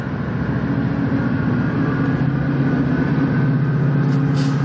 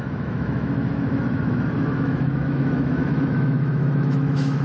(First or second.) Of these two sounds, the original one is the first